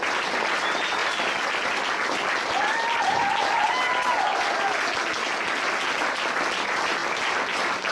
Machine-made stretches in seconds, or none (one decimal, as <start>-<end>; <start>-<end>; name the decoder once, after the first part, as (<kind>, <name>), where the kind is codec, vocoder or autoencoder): none